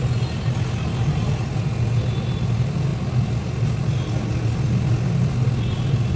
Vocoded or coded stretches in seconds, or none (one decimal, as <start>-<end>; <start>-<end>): none